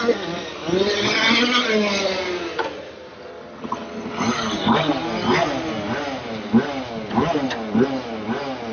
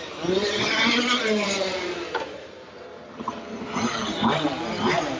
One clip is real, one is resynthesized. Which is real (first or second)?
first